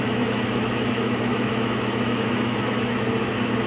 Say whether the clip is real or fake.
fake